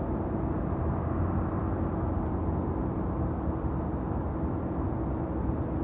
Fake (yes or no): no